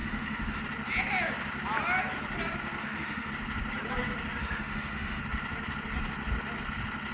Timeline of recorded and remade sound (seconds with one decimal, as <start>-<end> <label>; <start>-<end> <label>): 0.0-0.6 remade; 0.6-2.8 recorded; 2.8-3.3 remade; 3.3-4.4 recorded; 4.4-5.2 remade; 5.2-7.1 recorded